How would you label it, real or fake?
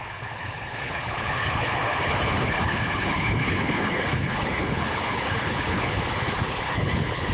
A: fake